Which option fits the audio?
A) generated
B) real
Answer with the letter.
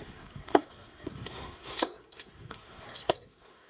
A